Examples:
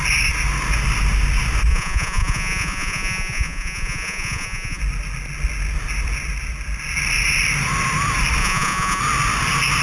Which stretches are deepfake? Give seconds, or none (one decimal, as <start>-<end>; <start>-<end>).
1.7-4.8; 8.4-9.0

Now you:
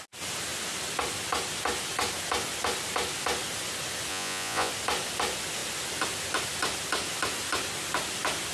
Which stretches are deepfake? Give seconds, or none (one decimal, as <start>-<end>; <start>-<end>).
4.1-4.7

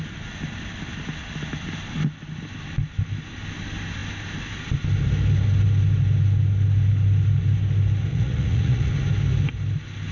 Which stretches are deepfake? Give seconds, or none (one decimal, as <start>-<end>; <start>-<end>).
8.1-8.9

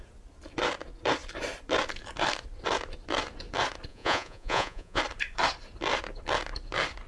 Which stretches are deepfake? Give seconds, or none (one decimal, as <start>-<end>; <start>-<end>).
3.9-5.0

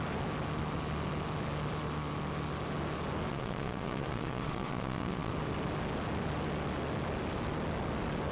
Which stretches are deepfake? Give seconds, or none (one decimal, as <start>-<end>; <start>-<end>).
3.3-5.3